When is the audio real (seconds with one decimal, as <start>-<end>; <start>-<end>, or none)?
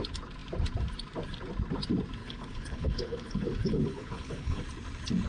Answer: 0.0-2.2; 4.6-5.3